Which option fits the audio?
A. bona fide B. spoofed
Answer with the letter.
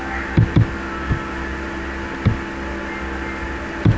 A